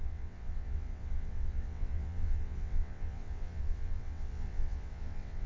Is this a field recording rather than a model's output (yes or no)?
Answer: no